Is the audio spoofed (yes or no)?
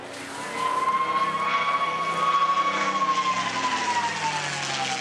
no